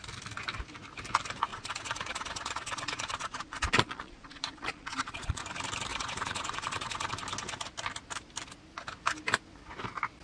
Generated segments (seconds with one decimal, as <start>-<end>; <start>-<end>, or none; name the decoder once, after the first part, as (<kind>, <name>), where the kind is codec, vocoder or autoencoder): 1.5-5.4 (vocoder, Vocos); 5.9-7.1